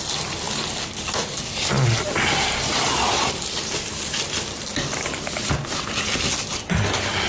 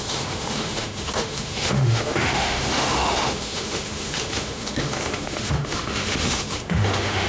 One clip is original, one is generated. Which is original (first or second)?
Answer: first